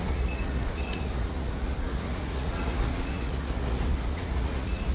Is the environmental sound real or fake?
fake